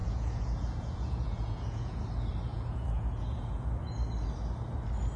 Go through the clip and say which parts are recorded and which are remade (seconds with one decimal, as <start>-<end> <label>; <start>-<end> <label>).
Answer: 0.0-2.0 remade; 2.0-2.5 recorded; 2.5-3.7 remade; 3.7-5.2 recorded